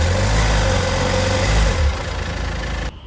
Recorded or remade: recorded